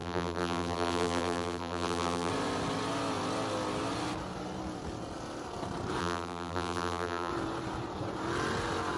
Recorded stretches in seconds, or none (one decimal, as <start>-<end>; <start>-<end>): 2.3-6.0; 7.3-9.0